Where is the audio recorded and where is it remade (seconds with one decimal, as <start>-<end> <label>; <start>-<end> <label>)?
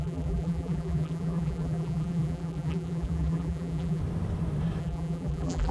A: 0.0-4.0 remade; 4.0-4.8 recorded; 4.8-5.7 remade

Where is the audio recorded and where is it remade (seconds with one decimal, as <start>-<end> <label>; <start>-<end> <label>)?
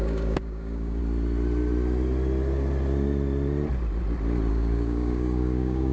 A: 0.0-1.0 remade; 1.0-4.5 recorded; 4.5-5.9 remade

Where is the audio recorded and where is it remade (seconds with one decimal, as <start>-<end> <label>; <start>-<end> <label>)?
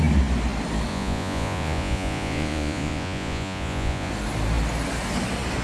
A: 0.0-0.9 recorded; 0.9-4.1 remade; 4.1-5.6 recorded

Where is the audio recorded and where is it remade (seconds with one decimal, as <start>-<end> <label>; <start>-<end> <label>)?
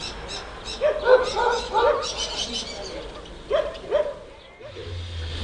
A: 0.0-5.4 recorded